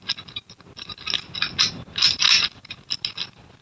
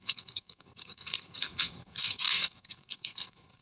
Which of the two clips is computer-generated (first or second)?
second